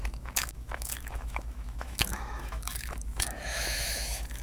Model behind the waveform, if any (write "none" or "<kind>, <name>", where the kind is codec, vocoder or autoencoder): autoencoder, DAC-VAE